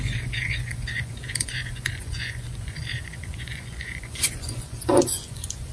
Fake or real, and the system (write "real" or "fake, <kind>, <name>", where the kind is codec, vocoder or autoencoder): fake, vocoder, Vocos